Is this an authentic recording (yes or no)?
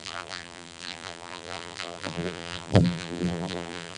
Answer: no